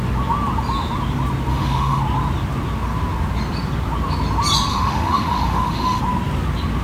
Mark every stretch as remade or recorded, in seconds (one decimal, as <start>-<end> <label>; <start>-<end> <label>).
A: 0.0-1.5 recorded; 1.5-2.0 remade; 2.0-4.7 recorded; 4.7-6.0 remade; 6.0-6.8 recorded